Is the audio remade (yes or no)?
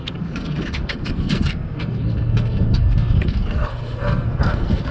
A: yes